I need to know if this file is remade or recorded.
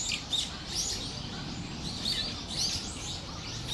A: recorded